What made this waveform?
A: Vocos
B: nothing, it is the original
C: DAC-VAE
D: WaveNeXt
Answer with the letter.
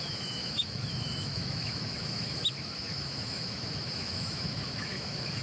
C